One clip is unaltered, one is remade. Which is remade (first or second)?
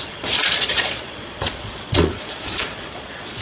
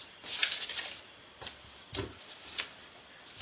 first